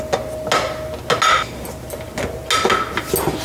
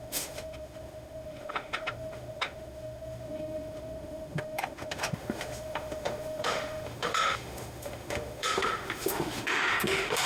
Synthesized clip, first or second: second